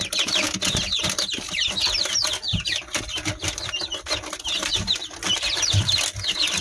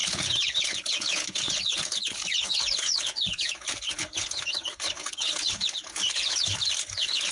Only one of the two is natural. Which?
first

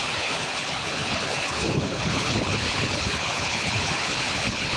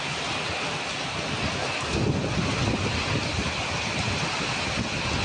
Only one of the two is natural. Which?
second